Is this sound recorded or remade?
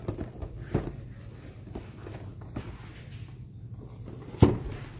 recorded